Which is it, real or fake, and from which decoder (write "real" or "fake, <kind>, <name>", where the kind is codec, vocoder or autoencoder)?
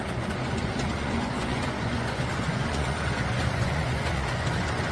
fake, vocoder, Vocos